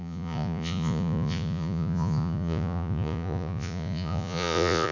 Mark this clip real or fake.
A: fake